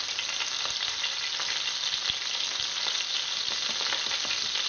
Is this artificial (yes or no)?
no